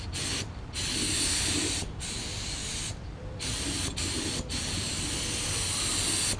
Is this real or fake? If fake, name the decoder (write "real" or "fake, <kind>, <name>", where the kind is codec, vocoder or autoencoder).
real